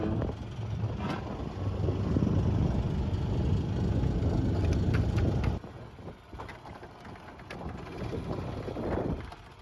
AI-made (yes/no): no